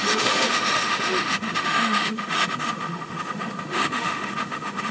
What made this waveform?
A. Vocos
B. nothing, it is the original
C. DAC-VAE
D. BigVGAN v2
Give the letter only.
C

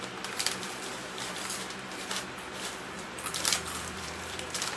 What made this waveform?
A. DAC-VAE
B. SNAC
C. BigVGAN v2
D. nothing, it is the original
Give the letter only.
C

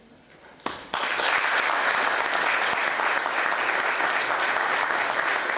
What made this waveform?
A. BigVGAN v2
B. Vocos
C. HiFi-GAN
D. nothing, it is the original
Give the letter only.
D